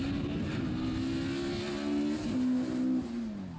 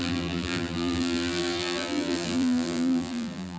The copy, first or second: second